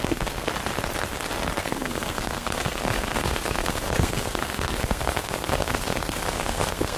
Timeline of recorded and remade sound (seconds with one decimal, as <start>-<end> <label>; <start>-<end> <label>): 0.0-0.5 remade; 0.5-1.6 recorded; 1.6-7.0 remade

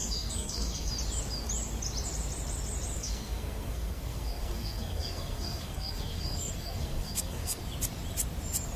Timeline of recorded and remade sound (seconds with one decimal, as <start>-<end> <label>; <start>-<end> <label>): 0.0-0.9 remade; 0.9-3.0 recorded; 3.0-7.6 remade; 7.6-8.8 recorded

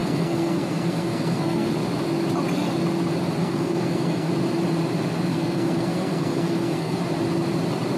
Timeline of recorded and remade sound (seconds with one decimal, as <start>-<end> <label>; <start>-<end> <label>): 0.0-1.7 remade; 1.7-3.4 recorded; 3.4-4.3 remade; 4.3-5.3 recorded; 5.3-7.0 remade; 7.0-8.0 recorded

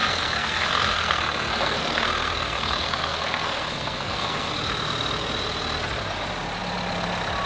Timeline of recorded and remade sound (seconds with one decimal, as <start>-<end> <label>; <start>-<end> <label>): 0.0-4.5 remade; 4.5-7.5 recorded

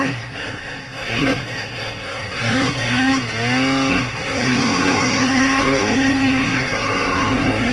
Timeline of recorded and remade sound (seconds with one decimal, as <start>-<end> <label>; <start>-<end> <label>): 0.0-3.2 remade; 3.2-3.9 recorded; 3.9-7.7 remade